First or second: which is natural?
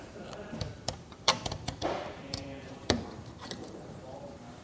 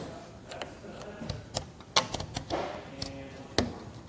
second